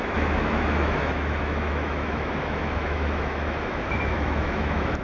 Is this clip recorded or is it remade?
remade